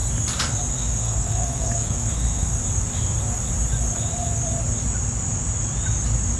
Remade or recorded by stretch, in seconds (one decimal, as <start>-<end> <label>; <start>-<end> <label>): 0.0-0.7 recorded; 0.7-2.6 remade; 2.6-6.4 recorded